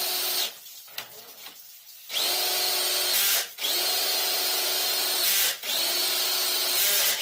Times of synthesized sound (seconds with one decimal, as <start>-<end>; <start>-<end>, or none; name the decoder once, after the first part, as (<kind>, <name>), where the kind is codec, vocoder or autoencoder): none